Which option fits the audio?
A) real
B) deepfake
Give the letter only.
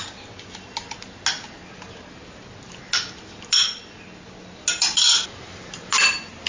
A